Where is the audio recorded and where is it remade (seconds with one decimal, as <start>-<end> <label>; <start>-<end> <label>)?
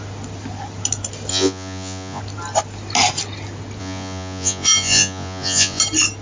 0.0-1.3 recorded; 1.3-2.2 remade; 2.2-3.8 recorded; 3.8-5.8 remade; 5.8-6.2 recorded